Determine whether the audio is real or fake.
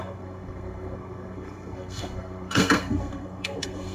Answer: fake